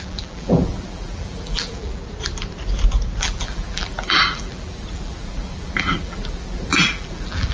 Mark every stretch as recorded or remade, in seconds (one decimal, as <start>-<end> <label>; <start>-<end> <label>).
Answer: 0.0-2.0 remade; 2.0-3.2 recorded; 3.2-7.5 remade